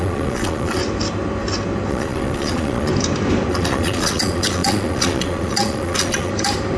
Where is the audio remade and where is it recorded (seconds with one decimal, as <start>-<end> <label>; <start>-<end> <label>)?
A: 0.0-0.8 remade; 0.8-1.9 recorded; 1.9-2.9 remade; 2.9-3.5 recorded; 3.5-6.3 remade; 6.3-6.8 recorded